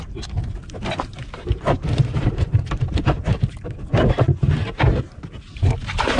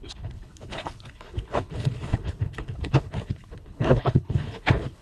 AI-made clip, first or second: second